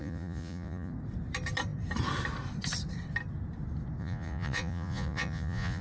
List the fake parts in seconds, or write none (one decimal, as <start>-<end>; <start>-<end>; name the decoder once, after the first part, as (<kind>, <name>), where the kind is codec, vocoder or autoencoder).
0.0-0.9 (vocoder, Vocos); 4.0-5.8